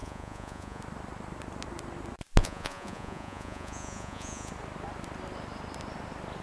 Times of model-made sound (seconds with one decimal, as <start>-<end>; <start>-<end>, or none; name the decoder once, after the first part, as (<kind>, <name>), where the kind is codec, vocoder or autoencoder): 0.0-0.8 (vocoder, Vocos); 2.4-4.5